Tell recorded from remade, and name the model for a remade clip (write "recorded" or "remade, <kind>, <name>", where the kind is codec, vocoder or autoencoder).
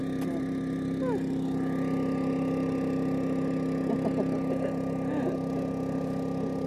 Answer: recorded